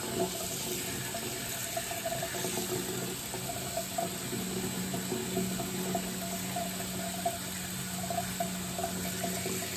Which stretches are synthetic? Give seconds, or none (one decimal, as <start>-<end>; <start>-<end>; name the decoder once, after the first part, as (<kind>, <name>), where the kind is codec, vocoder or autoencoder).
none